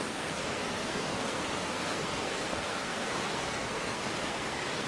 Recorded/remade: remade